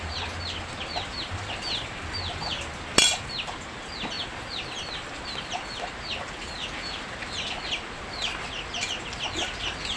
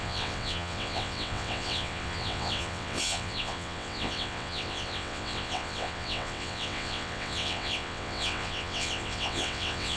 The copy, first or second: second